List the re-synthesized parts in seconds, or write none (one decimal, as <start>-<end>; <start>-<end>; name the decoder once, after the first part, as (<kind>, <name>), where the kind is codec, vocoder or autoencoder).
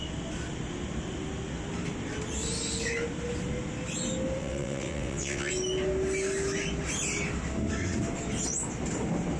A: 4.4-5.5 (vocoder, WaveNeXt)